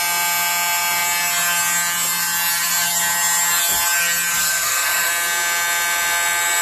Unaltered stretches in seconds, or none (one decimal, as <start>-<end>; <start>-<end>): 0.0-4.4; 5.1-6.6